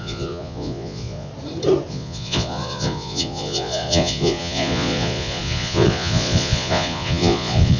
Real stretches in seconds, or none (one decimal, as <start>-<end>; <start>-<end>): 1.3-1.9